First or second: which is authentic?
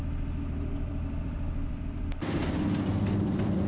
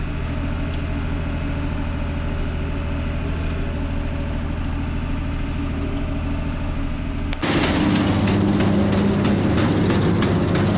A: second